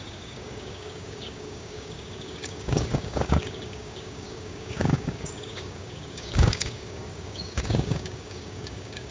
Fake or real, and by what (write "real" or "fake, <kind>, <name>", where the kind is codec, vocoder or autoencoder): fake, codec, DAC